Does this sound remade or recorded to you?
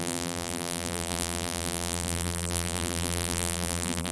remade